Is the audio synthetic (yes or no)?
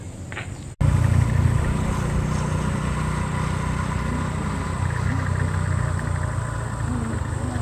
no